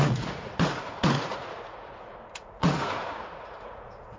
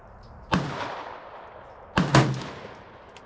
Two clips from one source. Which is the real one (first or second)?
second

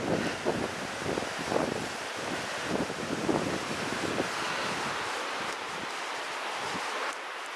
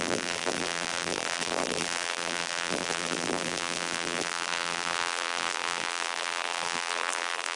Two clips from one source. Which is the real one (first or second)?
first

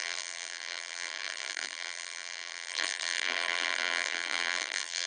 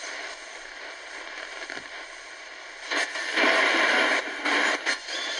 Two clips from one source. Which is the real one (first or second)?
second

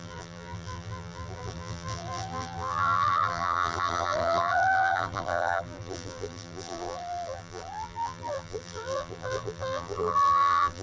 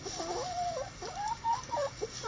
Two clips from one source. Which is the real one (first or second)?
second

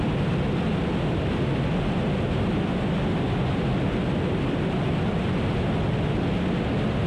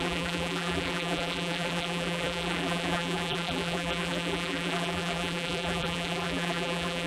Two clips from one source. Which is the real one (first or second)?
first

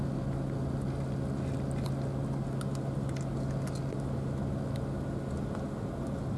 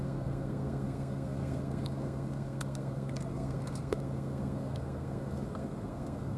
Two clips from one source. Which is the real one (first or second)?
first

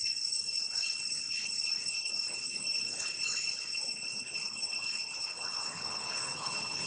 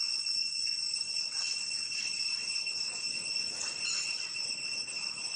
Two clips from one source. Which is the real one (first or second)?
second